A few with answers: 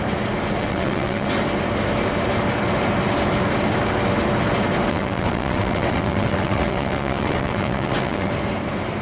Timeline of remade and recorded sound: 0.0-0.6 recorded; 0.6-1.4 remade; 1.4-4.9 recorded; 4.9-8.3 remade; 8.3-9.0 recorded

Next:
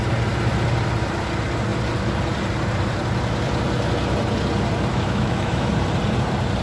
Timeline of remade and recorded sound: 0.0-4.9 recorded; 4.9-5.7 remade; 5.7-6.6 recorded